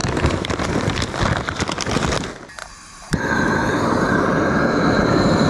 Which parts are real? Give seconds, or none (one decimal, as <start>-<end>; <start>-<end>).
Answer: 0.5-2.6